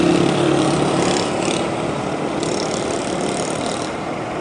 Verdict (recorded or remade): remade